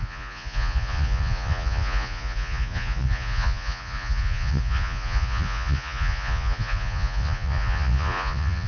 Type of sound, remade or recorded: remade